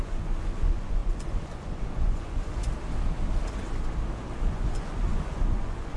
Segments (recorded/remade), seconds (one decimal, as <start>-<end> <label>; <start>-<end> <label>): 0.0-2.6 remade; 2.6-4.4 recorded; 4.4-6.0 remade